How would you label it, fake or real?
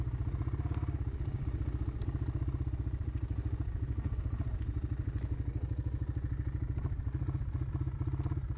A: real